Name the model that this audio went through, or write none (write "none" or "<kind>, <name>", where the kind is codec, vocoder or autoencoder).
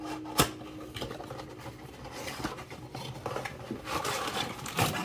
none